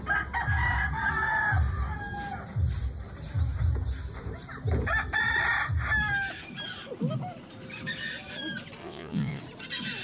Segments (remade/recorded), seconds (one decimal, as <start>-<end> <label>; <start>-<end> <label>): 0.0-8.8 recorded; 8.8-9.4 remade; 9.4-10.0 recorded